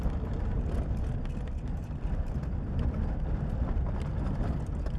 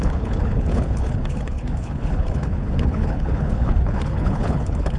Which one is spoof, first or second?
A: second